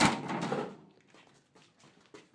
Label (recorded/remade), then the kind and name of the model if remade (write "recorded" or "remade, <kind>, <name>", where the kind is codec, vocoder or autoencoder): recorded